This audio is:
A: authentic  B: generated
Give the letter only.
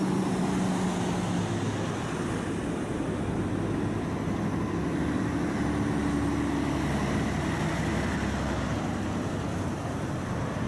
A